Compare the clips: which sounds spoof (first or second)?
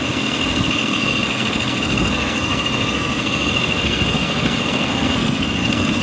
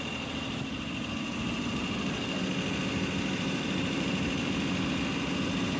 first